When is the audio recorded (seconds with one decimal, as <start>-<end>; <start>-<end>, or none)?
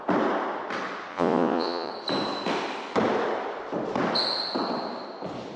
0.0-1.1; 1.9-5.6